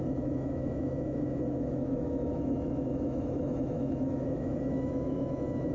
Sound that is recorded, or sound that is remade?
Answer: remade